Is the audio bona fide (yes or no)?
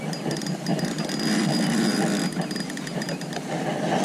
yes